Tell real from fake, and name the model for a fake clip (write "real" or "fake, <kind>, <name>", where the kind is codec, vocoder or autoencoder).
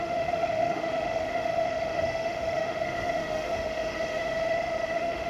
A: fake, autoencoder, DAC-VAE